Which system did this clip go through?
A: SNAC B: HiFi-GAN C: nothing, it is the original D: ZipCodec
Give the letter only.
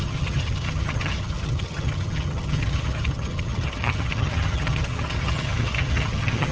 B